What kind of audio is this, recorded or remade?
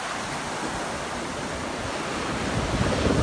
recorded